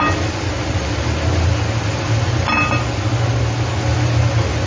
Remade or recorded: recorded